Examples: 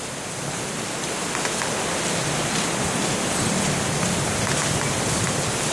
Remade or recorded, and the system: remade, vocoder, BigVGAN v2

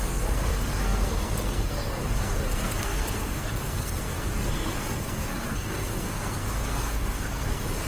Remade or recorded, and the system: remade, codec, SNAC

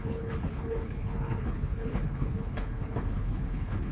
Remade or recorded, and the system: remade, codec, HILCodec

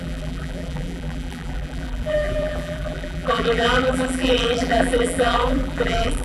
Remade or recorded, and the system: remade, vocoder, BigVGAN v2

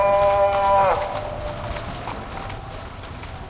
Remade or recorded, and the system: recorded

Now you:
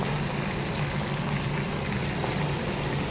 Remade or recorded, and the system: recorded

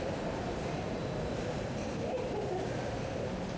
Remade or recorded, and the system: remade, vocoder, BigVGAN v2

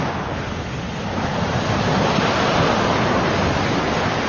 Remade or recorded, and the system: recorded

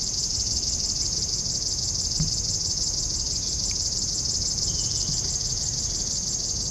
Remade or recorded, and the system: remade, vocoder, BigVGAN v2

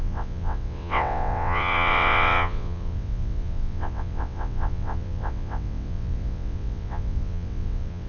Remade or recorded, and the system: remade, vocoder, WaveNeXt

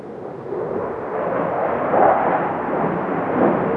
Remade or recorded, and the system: recorded